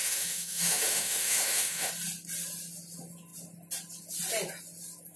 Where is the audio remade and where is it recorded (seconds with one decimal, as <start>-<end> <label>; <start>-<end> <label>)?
0.0-1.9 remade; 1.9-5.2 recorded